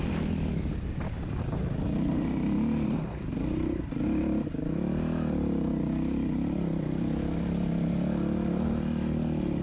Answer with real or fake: real